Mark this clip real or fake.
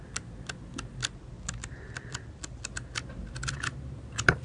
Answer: real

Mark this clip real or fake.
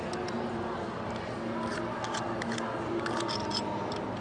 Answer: real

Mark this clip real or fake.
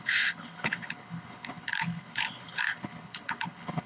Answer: fake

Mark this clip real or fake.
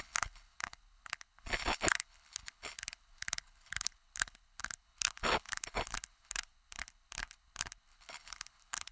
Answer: fake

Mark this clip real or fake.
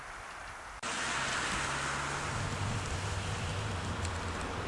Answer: real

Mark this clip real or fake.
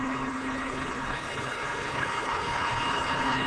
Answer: fake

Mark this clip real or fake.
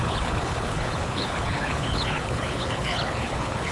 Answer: fake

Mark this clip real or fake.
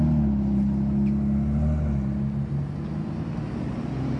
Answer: real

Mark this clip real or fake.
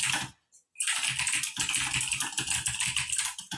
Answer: real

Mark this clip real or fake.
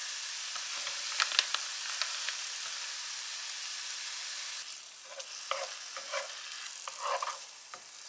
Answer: real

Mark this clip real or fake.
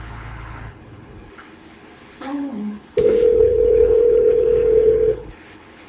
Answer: fake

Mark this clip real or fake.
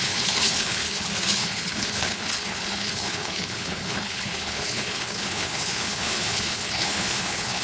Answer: fake